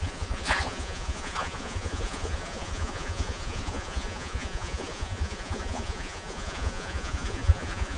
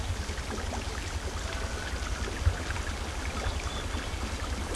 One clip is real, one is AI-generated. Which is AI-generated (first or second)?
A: first